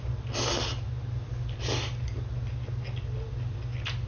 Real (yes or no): yes